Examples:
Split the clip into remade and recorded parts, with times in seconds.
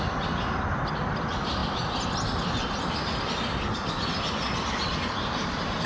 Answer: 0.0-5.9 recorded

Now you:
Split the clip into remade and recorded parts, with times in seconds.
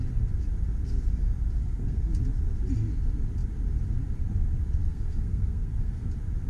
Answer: 0.0-1.6 recorded; 1.6-2.1 remade; 2.1-4.9 recorded; 4.9-6.1 remade; 6.1-6.5 recorded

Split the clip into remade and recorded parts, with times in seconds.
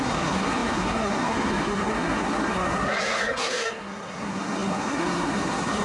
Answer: 0.0-5.8 remade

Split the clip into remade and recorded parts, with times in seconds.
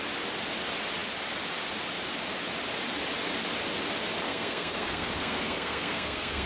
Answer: 0.0-4.3 recorded; 4.3-6.5 remade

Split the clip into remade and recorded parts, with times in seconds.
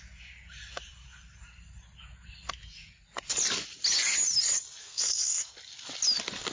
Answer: 0.0-4.8 recorded; 4.8-5.5 remade; 5.5-6.5 recorded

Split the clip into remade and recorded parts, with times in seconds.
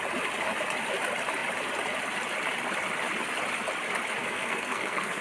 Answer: 0.0-4.2 recorded; 4.2-5.2 remade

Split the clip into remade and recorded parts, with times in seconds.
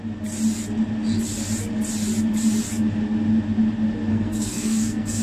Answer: 0.0-4.1 recorded; 4.1-5.2 remade